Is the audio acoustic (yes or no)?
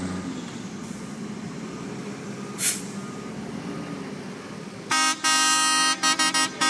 yes